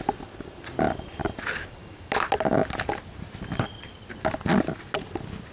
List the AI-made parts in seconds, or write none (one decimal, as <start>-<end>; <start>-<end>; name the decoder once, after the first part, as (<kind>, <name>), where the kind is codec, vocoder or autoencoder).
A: none